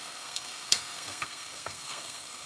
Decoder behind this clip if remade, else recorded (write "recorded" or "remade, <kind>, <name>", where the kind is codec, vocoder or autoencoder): remade, codec, SNAC